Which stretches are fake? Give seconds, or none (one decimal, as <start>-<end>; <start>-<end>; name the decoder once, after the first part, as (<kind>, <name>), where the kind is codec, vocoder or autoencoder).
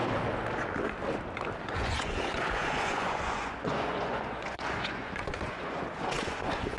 1.7-6.8 (vocoder, Vocos)